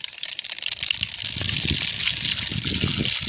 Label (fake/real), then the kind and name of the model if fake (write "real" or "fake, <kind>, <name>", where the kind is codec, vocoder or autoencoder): real